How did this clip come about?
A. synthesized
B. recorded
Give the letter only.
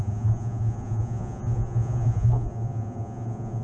A